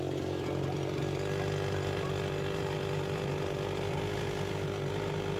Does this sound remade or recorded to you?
recorded